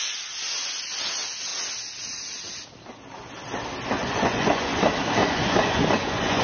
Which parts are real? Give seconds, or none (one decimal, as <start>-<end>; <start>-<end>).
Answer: 0.0-4.0; 4.8-5.2